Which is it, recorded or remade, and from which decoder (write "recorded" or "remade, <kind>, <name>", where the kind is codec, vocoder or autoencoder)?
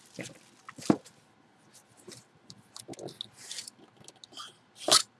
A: recorded